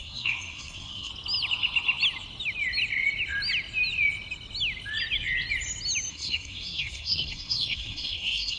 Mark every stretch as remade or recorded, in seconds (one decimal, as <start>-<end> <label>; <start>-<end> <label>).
0.0-1.1 remade; 1.1-6.1 recorded; 6.1-8.6 remade